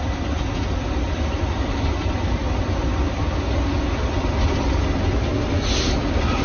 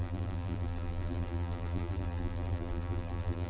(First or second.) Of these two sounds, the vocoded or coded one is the second